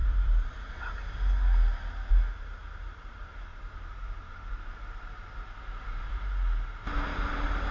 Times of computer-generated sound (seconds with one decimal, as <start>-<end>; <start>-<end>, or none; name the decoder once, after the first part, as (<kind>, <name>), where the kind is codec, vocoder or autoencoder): 0.0-0.6 (vocoder, BigVGAN v2); 3.5-6.2